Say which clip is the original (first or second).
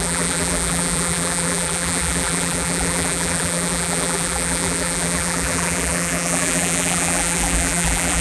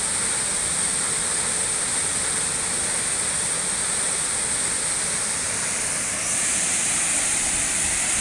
second